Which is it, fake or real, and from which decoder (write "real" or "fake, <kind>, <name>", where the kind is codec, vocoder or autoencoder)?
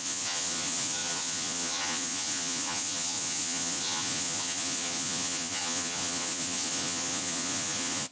fake, vocoder, Vocos